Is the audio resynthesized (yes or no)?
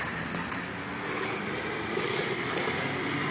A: no